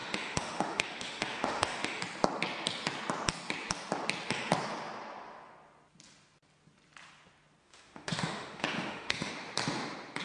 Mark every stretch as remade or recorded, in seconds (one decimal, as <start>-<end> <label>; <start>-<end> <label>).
0.0-2.0 remade; 2.0-7.6 recorded; 7.6-9.3 remade; 9.3-10.2 recorded